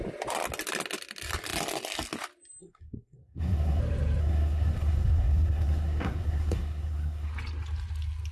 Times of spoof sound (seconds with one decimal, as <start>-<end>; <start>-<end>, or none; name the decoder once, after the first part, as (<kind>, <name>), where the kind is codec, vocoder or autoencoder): 2.6-3.8 (codec, SNAC); 4.2-7.3